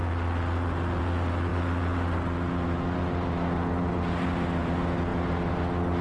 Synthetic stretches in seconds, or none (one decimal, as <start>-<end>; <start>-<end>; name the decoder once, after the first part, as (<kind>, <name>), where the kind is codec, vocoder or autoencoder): none